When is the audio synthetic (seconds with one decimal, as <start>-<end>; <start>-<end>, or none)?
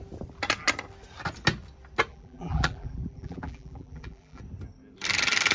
2.1-4.4